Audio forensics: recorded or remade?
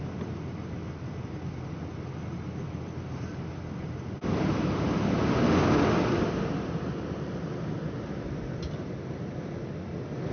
recorded